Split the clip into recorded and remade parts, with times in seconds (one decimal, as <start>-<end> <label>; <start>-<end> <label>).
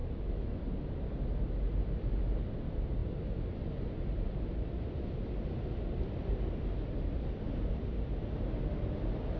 0.0-0.6 remade; 0.6-9.4 recorded